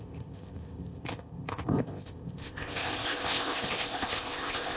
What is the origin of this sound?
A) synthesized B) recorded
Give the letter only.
A